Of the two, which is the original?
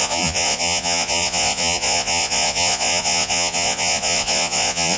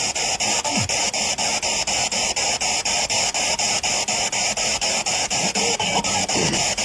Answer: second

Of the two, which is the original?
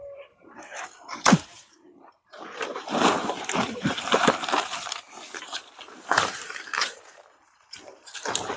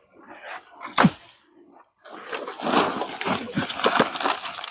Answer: second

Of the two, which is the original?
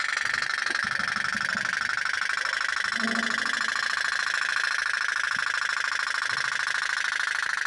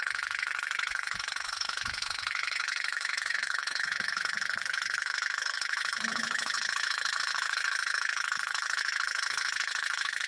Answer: first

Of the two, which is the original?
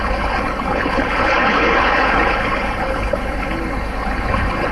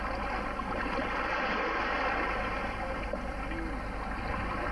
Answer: second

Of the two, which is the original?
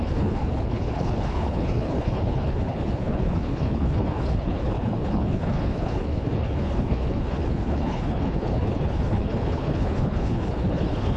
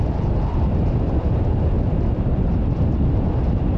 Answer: second